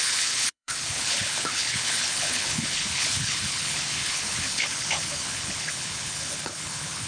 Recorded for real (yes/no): no